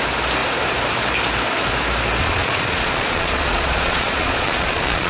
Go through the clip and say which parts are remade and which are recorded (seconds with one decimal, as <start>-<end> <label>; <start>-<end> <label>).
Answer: 0.0-2.2 recorded; 2.2-5.1 remade